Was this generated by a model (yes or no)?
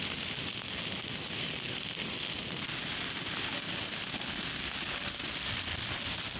no